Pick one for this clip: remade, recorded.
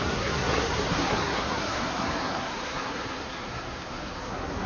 remade